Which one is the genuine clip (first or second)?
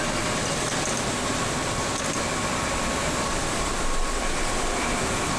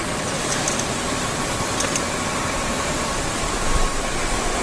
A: first